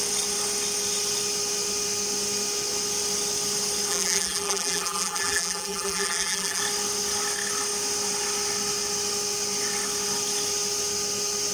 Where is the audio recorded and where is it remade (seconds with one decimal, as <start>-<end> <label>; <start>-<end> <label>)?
0.0-3.9 recorded; 3.9-6.6 remade; 6.6-11.5 recorded